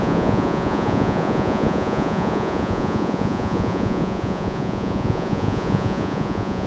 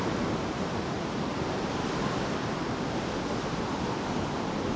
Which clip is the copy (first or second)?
first